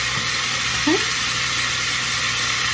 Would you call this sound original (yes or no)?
no